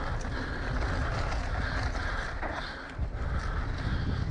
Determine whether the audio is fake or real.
real